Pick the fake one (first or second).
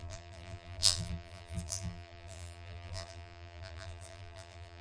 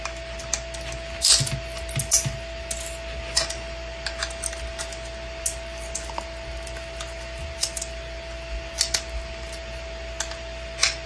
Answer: first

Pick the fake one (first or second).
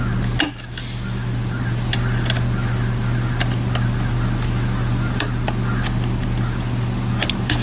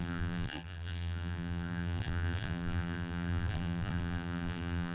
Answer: second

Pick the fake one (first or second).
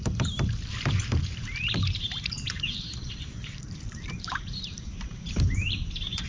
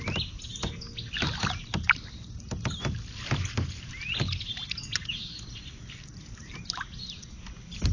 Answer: first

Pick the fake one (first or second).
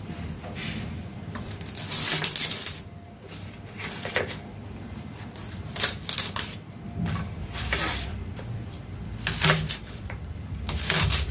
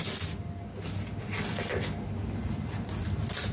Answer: first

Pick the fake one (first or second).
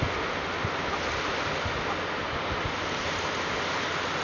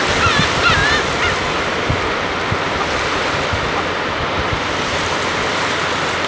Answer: second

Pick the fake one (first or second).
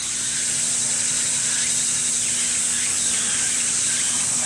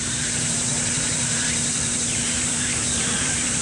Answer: second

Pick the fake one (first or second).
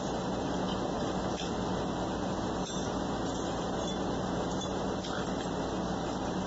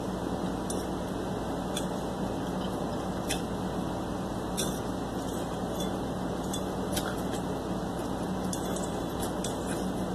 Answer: first